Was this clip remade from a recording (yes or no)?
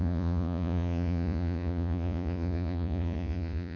yes